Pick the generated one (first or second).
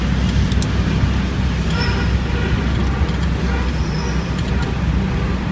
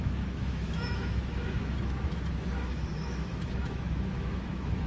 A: second